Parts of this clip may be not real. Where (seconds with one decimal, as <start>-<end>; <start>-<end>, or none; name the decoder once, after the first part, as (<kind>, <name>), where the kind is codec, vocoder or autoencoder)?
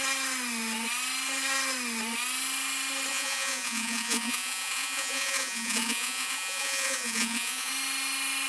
3.1-7.7 (vocoder, Vocos)